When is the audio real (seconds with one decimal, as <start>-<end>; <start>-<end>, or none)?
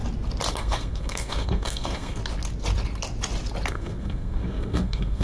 0.0-0.5; 2.2-3.7